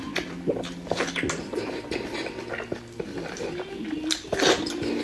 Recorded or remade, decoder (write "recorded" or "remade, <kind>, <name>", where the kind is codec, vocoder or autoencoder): recorded